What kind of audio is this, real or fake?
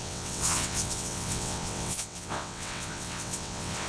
fake